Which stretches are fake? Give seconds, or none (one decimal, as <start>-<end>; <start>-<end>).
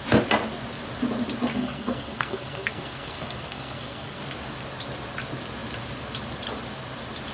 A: 1.5-4.2